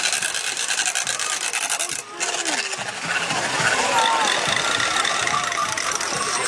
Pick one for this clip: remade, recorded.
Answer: recorded